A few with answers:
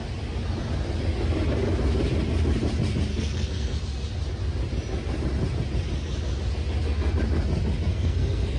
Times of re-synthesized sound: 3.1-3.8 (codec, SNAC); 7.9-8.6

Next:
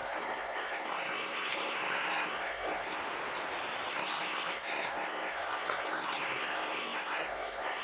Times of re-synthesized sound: 0.0-3.0 (codec, SNAC); 3.9-7.8

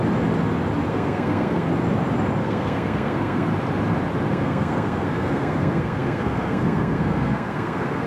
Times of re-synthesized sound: 0.9-1.7 (codec, SNAC); 2.4-3.5; 4.3-8.1

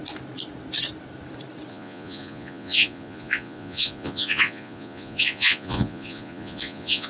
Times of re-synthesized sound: 1.7-7.1 (vocoder, Vocos)

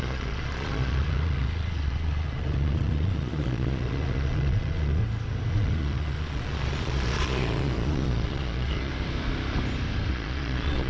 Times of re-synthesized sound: 0.0-5.0 (vocoder, Vocos); 5.5-8.9; 10.1-10.9

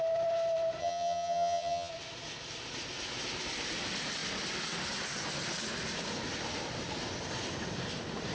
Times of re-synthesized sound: 0.8-1.9 (vocoder, HiFi-GAN)

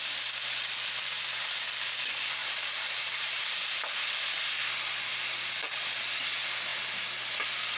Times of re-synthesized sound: 2.4-4.4 (vocoder, BigVGAN v2)

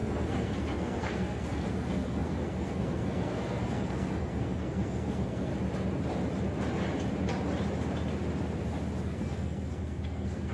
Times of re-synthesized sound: 0.0-5.5 (codec, SNAC); 9.0-10.5